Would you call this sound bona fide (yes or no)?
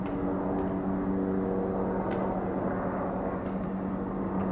yes